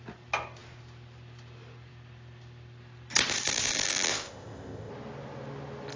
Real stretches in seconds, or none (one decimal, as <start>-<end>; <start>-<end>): 0.0-4.1; 4.9-6.0